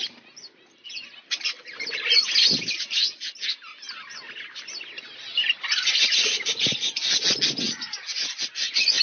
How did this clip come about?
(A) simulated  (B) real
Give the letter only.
B